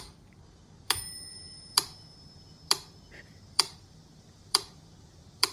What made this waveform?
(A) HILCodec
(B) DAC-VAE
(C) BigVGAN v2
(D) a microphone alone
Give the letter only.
C